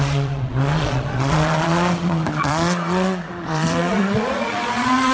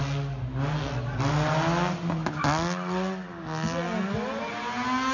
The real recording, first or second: second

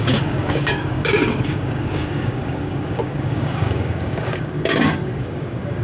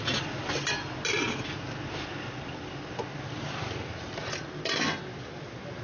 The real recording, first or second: second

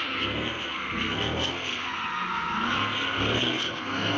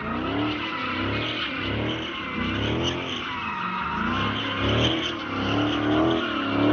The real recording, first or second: second